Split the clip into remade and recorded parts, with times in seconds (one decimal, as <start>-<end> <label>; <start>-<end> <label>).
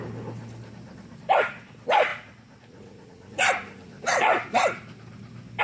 0.0-5.6 recorded